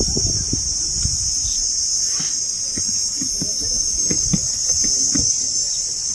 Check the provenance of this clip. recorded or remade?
recorded